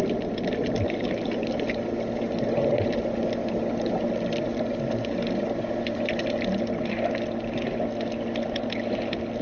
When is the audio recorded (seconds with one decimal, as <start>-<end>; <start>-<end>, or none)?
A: 0.0-9.4